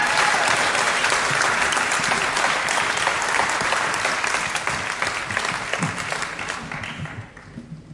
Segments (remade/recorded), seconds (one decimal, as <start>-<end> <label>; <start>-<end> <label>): 0.0-4.1 remade; 4.1-7.9 recorded